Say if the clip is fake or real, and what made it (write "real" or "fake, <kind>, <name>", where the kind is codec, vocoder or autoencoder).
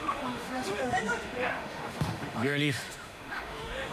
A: fake, autoencoder, DAC-VAE